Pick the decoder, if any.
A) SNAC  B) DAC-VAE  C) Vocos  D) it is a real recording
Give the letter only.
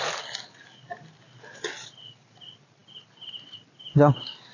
D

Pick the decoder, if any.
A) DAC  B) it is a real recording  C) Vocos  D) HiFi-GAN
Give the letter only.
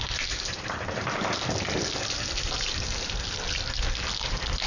B